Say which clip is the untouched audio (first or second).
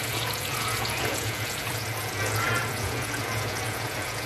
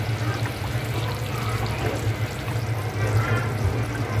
second